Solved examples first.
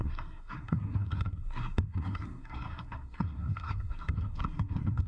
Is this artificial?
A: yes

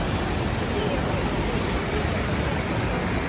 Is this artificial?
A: no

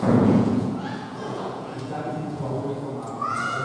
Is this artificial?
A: yes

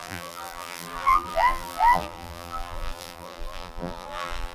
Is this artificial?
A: yes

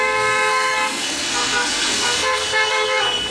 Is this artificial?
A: yes